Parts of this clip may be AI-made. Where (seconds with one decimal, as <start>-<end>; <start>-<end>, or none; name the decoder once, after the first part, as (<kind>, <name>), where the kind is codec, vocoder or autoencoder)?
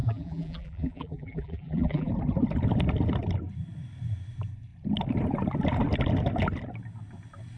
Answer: 0.0-2.1 (vocoder, BigVGAN v2)